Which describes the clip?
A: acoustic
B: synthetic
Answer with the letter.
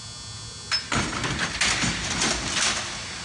A